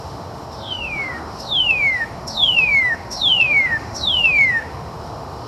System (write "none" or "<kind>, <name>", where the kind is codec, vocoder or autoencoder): autoencoder, DAC-VAE